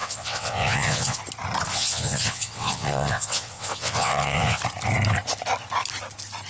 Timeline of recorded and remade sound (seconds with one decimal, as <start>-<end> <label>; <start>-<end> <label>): 0.0-1.2 remade; 1.2-1.7 recorded; 1.7-4.6 remade; 4.6-6.5 recorded